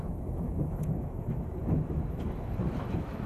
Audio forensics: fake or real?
fake